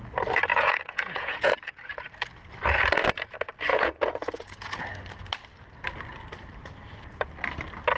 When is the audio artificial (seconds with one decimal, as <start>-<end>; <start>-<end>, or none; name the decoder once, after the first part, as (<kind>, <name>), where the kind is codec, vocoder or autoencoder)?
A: 0.5-1.5 (vocoder, Vocos); 3.7-4.8